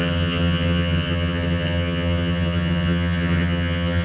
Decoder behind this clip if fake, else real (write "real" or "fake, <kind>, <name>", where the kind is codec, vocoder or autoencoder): fake, vocoder, HiFi-GAN